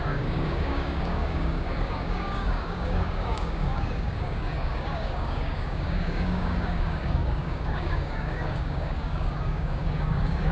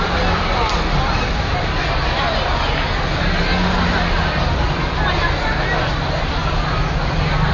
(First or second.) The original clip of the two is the second